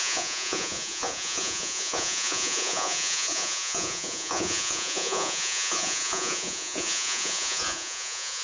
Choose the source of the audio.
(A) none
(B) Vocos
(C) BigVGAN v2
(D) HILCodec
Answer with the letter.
B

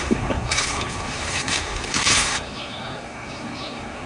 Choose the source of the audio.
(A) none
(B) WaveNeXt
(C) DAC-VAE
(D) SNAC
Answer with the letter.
D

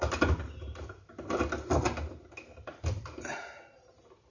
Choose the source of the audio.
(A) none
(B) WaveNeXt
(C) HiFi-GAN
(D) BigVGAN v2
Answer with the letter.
A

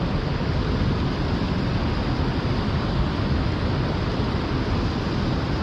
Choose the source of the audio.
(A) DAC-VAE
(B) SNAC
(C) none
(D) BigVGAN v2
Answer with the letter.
C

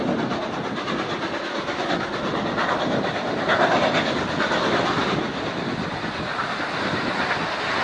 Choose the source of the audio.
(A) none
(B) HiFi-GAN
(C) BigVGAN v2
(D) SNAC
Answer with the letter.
A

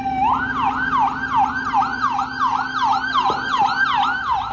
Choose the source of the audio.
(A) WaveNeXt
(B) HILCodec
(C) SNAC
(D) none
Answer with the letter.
D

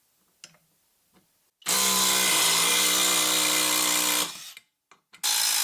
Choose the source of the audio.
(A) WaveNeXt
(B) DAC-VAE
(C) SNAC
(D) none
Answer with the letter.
D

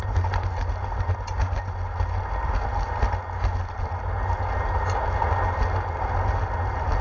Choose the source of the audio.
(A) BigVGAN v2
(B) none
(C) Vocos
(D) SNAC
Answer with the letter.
B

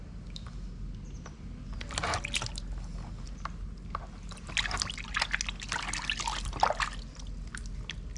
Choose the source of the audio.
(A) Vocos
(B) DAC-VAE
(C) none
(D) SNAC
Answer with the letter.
C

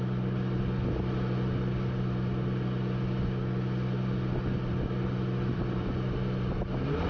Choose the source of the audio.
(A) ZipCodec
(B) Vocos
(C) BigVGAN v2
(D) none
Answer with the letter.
D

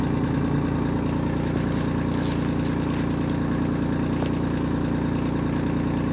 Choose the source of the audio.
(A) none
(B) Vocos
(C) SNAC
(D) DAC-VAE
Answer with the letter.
A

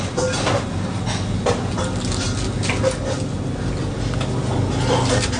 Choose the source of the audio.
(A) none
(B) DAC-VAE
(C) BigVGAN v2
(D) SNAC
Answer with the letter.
A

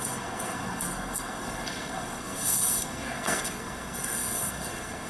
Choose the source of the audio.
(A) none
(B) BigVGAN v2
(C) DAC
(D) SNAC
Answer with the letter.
D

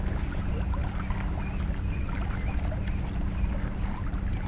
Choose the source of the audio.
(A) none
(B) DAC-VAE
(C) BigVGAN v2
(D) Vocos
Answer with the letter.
A